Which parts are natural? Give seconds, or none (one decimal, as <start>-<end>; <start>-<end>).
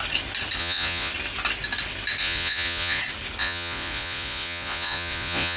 0.0-0.6; 1.1-2.2; 3.0-3.4